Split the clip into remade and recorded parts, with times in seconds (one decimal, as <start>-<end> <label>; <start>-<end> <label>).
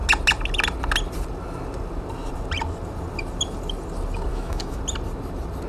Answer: 0.0-4.3 recorded; 4.3-4.8 remade; 4.8-5.7 recorded